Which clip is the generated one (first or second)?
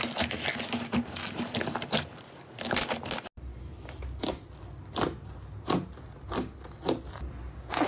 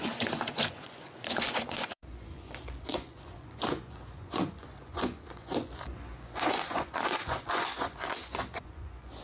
second